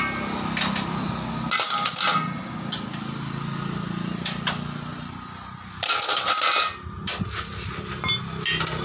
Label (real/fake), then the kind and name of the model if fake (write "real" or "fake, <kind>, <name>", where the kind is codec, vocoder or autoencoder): real